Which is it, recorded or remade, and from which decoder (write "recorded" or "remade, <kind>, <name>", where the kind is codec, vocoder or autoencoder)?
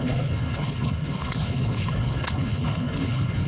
remade, codec, HILCodec